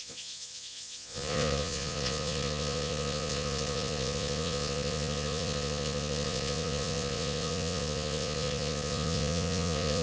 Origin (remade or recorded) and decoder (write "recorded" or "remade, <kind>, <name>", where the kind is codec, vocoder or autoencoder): remade, vocoder, Vocos